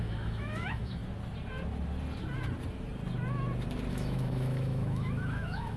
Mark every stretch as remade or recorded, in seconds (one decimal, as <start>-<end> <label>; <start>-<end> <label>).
0.0-1.0 remade; 1.0-3.9 recorded; 3.9-5.8 remade